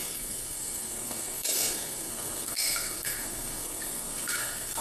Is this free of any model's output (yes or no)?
no